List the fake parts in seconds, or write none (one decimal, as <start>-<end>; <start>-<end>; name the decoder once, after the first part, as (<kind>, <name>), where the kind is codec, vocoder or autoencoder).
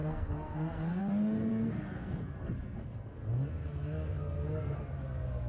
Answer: 0.0-1.0 (codec, SNAC); 1.5-4.8